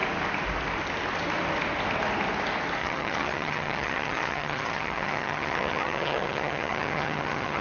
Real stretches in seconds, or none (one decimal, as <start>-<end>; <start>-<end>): 0.0-2.8